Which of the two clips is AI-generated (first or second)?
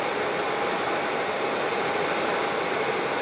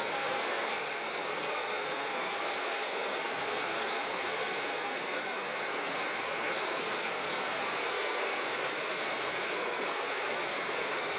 second